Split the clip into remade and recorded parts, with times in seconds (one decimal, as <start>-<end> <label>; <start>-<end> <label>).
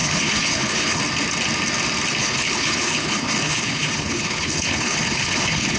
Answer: 0.0-1.0 remade; 1.0-2.2 recorded; 2.2-5.8 remade